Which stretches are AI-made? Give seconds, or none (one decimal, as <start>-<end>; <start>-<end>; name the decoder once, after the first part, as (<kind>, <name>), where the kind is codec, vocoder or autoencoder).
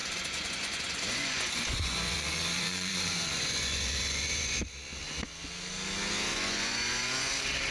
0.0-4.6 (vocoder, Vocos); 6.3-7.3